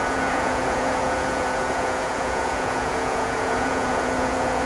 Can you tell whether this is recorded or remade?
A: remade